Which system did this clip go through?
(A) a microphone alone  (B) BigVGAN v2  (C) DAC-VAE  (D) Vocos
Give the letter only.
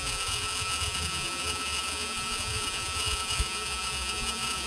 D